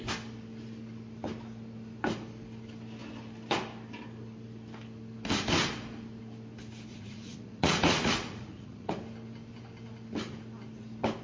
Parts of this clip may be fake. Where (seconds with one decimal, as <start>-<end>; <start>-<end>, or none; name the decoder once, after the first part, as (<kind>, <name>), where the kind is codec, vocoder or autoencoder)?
6.9-8.9 (vocoder, Vocos)